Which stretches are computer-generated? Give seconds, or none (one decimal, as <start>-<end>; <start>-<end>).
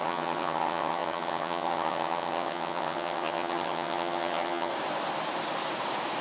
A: 0.0-4.7